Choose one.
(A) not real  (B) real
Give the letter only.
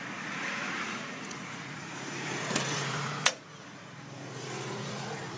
A